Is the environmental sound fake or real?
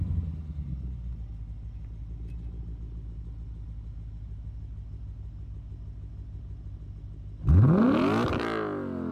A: real